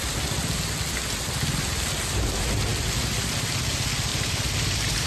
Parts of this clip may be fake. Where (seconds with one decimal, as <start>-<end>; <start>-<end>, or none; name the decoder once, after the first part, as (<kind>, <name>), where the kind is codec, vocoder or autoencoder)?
4.1-5.1 (vocoder, BigVGAN v2)